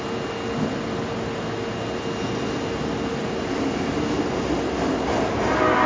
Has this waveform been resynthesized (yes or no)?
no